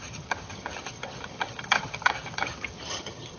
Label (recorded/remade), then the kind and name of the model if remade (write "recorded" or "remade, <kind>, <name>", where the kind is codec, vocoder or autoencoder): remade, vocoder, HiFi-GAN